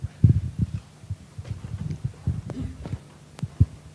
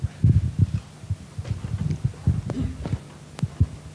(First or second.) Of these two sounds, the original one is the second